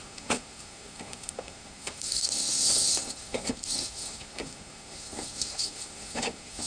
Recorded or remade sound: remade